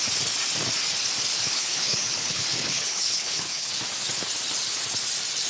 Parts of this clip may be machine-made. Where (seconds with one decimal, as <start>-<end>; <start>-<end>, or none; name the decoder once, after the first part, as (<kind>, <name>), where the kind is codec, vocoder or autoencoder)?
1.3-3.7 (codec, HILCodec)